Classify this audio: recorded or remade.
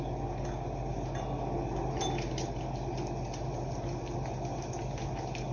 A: recorded